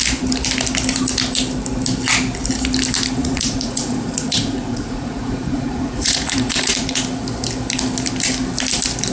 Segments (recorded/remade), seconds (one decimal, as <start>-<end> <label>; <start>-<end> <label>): 0.0-3.2 recorded; 3.2-7.0 remade; 7.0-9.1 recorded